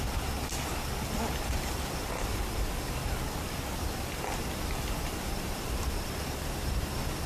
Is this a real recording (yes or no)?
yes